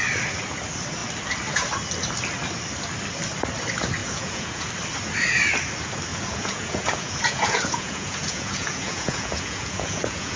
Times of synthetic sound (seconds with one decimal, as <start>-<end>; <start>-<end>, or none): 4.0-4.7; 6.1-10.4